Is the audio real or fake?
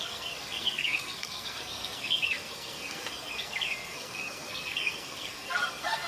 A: fake